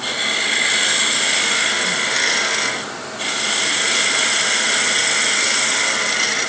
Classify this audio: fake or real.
real